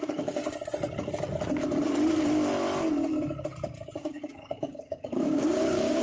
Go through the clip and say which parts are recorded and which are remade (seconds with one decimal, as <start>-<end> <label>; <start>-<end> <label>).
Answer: 0.0-0.4 remade; 0.4-4.0 recorded; 4.0-6.0 remade